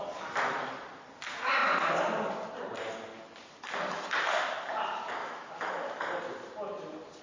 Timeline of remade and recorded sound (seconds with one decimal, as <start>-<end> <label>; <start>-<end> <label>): 0.0-5.2 recorded; 5.2-6.0 remade; 6.0-7.2 recorded